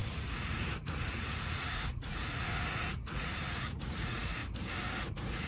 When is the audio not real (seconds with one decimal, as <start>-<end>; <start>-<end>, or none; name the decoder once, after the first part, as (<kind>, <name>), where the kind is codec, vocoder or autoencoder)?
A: 0.0-4.4 (vocoder, Vocos); 5.0-5.5